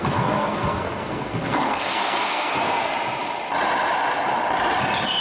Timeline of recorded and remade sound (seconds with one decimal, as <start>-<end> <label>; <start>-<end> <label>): 0.0-2.9 remade; 2.9-5.2 recorded